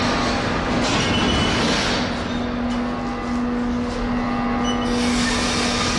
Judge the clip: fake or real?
real